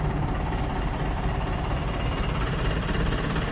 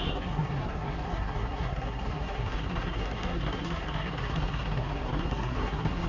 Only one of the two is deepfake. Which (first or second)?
second